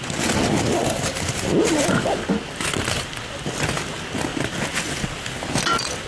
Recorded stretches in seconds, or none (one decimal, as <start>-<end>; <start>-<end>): 0.0-6.1